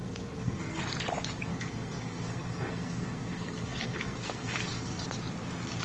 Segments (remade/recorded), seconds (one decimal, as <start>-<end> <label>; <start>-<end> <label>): 0.0-0.8 remade; 0.8-1.5 recorded; 1.5-5.0 remade; 5.0-5.8 recorded